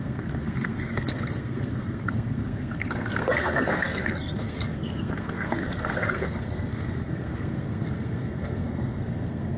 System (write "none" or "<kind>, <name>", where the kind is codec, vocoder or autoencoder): codec, SNAC